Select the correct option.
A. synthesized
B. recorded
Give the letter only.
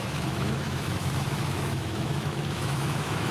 A